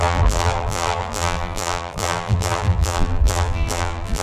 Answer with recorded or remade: remade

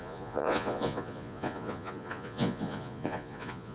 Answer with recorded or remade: remade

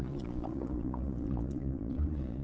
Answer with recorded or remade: remade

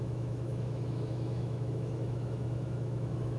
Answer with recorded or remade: remade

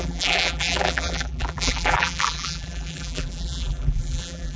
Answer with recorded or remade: remade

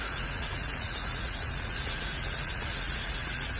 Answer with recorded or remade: remade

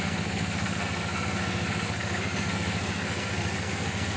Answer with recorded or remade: remade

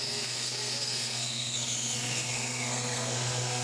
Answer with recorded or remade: remade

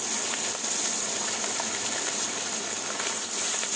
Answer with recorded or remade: recorded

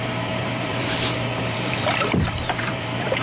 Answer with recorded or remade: remade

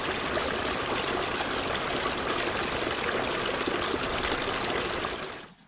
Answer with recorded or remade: recorded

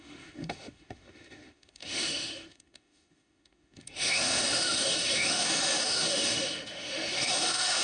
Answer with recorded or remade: remade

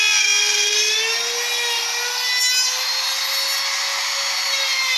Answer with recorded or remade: recorded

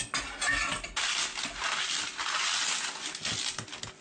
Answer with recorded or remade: recorded